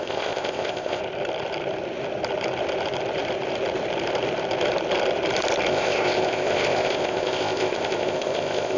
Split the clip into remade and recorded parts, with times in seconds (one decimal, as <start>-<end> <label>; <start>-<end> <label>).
0.0-1.0 remade; 1.0-5.7 recorded; 5.7-8.8 remade